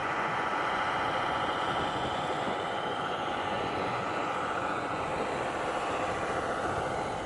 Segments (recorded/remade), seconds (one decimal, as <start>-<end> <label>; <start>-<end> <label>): 0.0-5.1 remade; 5.1-7.3 recorded